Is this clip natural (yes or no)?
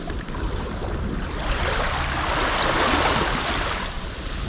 yes